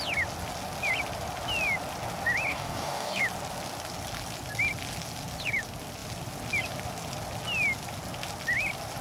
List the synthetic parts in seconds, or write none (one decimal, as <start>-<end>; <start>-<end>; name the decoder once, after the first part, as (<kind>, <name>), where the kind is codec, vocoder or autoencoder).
2.5-3.2 (codec, DAC)